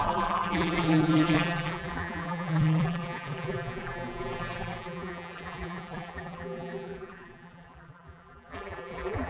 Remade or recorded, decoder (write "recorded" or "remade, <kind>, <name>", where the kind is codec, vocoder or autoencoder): remade, vocoder, BigVGAN v2